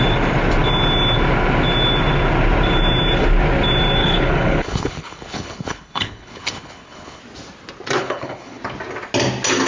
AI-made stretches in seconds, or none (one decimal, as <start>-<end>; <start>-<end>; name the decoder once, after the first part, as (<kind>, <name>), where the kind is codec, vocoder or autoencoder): 4.0-7.2 (codec, HILCodec); 8.0-8.6